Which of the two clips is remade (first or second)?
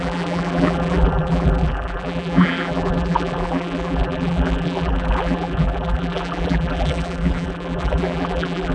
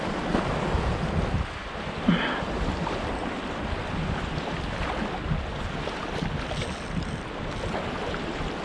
first